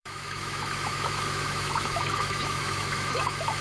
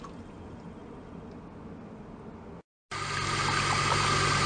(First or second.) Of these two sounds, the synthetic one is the first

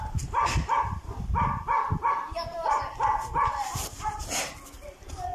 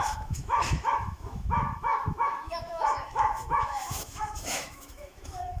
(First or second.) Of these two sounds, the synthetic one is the second